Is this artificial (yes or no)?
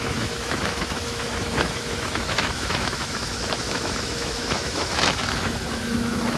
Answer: yes